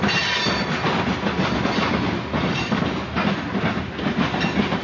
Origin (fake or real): real